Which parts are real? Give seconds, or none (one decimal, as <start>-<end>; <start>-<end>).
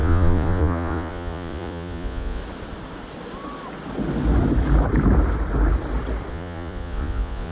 2.4-6.3